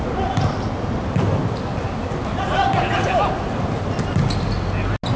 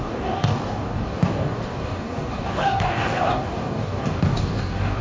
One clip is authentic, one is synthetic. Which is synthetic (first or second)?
second